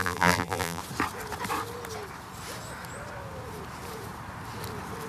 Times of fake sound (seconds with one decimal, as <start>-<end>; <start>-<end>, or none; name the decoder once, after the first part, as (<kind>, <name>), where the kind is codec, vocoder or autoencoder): 0.0-0.8 (vocoder, BigVGAN v2)